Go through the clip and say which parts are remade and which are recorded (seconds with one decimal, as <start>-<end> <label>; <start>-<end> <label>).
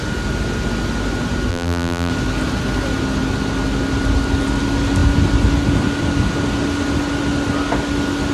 0.0-1.5 recorded; 1.5-2.1 remade; 2.1-8.3 recorded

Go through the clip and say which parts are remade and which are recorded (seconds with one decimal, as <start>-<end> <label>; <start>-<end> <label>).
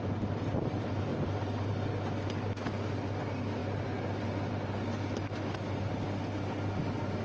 0.0-7.2 recorded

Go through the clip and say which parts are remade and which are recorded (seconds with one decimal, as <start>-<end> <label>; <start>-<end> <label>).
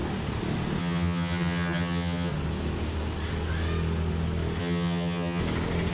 0.0-0.8 recorded; 0.8-2.3 remade; 2.3-4.6 recorded; 4.6-5.4 remade; 5.4-5.9 recorded